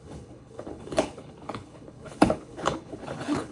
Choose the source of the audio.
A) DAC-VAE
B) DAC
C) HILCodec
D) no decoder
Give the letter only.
C